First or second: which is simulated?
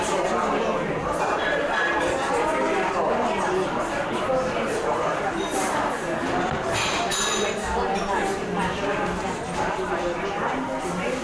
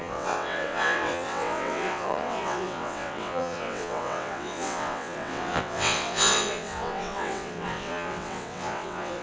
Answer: second